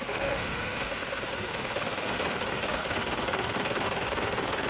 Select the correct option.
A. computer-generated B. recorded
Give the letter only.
A